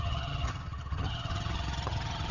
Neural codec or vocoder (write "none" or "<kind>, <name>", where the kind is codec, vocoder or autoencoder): vocoder, HiFi-GAN